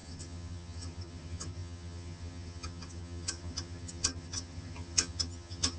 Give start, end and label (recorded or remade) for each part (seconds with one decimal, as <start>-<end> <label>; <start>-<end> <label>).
0.0-5.8 remade